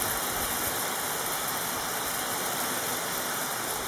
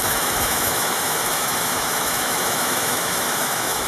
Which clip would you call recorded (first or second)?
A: first